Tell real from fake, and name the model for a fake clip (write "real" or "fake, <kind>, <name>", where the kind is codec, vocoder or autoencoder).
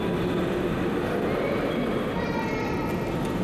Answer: real